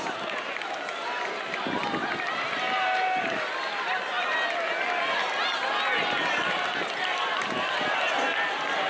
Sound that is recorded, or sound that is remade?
recorded